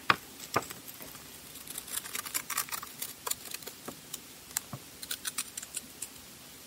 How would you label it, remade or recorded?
recorded